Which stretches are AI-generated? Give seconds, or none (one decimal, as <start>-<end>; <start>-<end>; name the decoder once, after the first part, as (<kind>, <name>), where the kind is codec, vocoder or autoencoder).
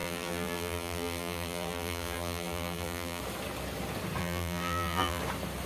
0.0-3.2 (vocoder, BigVGAN v2); 4.2-5.2